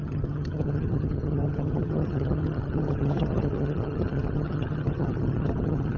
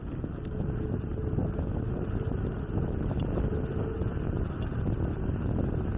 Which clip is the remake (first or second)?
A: first